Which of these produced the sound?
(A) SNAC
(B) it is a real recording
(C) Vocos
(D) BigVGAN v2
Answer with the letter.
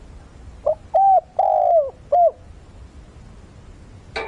B